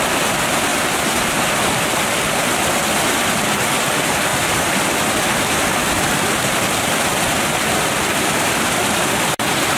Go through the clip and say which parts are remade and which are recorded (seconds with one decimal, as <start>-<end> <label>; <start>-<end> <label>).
0.0-0.7 remade; 0.7-3.8 recorded; 3.8-9.8 remade